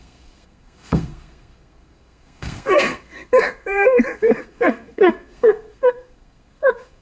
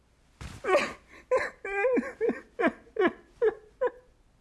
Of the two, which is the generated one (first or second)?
first